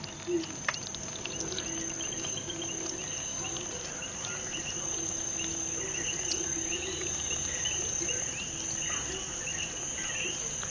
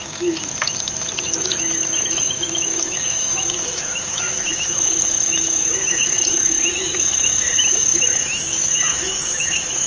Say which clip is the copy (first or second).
second